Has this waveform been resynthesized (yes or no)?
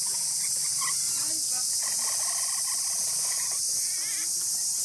no